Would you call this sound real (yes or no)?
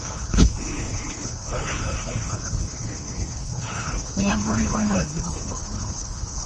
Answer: no